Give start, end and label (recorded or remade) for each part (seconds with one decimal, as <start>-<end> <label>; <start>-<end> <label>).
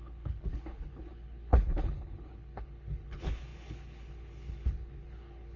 0.0-5.6 remade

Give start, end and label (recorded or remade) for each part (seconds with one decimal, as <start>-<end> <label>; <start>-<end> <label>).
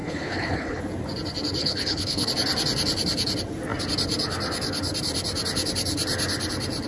0.0-0.8 remade; 0.8-1.6 recorded; 1.6-2.3 remade; 2.3-6.9 recorded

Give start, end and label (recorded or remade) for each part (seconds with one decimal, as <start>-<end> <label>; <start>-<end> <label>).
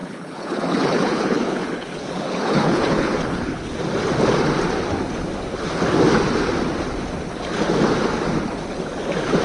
0.0-3.8 remade; 3.8-9.4 recorded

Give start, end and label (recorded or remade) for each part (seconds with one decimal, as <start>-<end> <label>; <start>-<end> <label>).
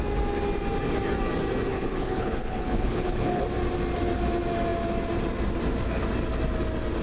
0.0-1.7 recorded; 1.7-3.4 remade; 3.4-7.0 recorded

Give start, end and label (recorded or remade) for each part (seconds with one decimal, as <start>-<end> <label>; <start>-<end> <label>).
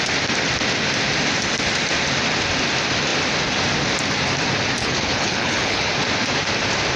0.0-4.8 recorded; 4.8-5.9 remade; 5.9-7.0 recorded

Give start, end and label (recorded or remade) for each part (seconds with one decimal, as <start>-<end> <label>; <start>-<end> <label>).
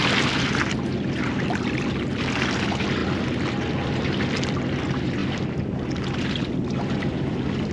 0.0-7.7 recorded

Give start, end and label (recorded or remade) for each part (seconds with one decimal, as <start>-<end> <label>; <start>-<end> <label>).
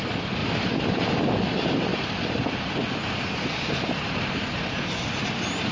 0.0-5.7 recorded